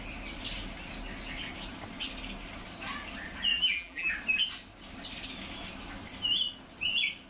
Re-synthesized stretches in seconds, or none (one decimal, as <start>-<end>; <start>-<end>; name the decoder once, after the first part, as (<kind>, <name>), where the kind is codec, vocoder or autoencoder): 3.5-4.1 (vocoder, BigVGAN v2)